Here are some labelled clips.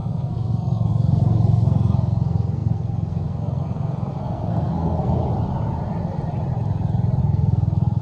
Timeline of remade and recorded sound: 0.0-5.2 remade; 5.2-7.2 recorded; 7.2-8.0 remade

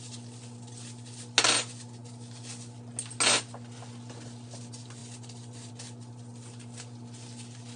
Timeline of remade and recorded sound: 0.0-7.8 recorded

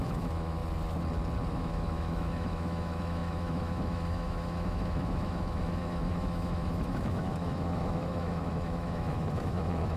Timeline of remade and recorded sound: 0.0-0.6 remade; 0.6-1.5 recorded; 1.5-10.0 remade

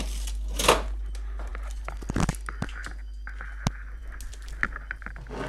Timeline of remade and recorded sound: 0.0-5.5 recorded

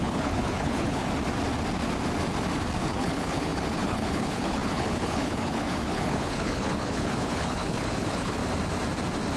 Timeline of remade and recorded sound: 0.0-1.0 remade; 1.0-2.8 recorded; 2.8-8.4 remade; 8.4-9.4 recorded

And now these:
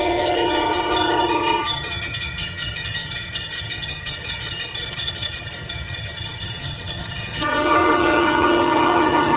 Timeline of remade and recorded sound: 0.0-9.4 remade

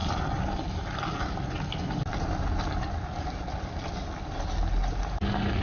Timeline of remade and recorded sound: 0.0-5.6 recorded

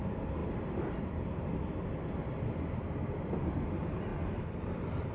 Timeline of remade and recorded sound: 0.0-5.1 recorded